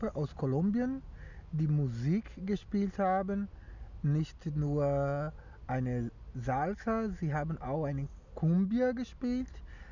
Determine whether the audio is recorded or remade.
recorded